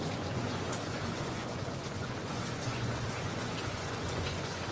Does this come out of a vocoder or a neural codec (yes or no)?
yes